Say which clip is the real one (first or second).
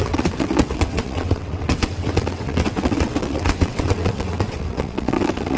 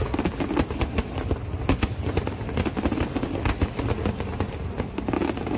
second